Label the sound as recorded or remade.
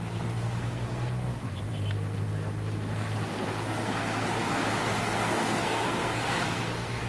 remade